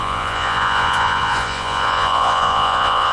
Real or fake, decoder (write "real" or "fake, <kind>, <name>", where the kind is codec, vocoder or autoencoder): fake, vocoder, Vocos